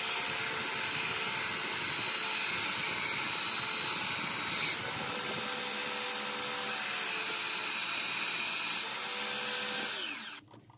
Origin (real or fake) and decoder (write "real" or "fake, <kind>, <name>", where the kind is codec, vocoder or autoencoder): real